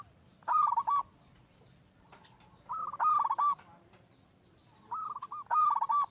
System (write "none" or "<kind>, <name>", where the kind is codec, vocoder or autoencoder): none